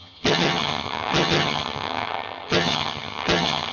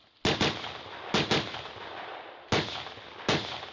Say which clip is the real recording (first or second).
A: second